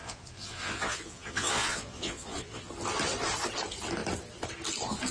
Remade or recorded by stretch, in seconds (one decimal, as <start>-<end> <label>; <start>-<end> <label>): 0.0-2.7 remade; 2.7-5.1 recorded